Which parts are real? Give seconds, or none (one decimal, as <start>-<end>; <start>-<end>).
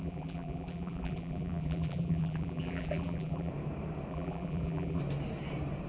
3.5-4.1; 5.0-5.9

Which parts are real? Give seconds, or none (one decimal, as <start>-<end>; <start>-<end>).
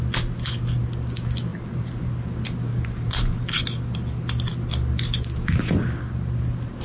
0.0-1.5; 2.1-2.7; 3.4-6.8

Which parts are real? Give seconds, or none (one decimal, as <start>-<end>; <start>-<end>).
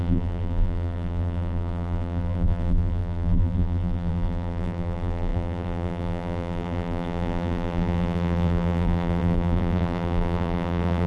none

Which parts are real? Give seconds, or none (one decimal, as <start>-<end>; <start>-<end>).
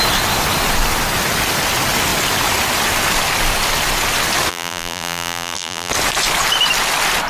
0.0-4.5; 5.9-7.3